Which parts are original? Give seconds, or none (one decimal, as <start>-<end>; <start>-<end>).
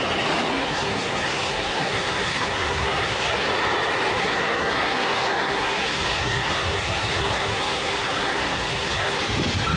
0.0-0.5; 3.5-4.2; 9.2-9.8